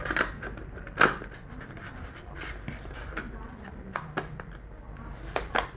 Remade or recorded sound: remade